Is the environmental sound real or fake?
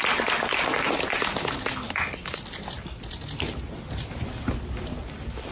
real